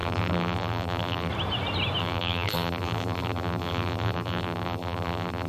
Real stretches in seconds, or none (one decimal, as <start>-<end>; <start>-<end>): 1.3-2.0